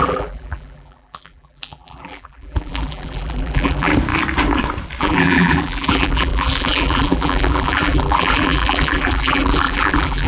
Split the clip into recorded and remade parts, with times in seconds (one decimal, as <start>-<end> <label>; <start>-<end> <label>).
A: 0.0-3.9 remade; 3.9-5.0 recorded; 5.0-10.3 remade

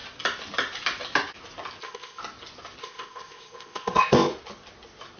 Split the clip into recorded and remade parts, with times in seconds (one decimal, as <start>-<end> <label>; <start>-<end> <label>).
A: 0.0-1.8 recorded; 1.8-2.2 remade; 2.2-2.8 recorded; 2.8-4.3 remade; 4.3-5.2 recorded

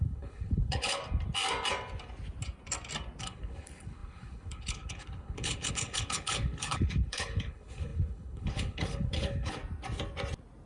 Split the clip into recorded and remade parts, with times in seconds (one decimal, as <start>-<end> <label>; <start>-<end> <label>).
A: 0.0-1.0 remade; 1.0-3.2 recorded; 3.2-9.6 remade; 9.6-10.7 recorded

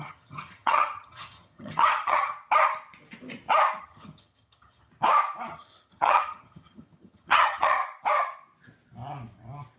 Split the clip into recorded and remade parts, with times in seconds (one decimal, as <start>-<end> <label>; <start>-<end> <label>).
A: 0.0-2.3 remade; 2.3-3.8 recorded; 3.8-4.9 remade; 4.9-5.5 recorded; 5.5-7.8 remade; 7.8-9.8 recorded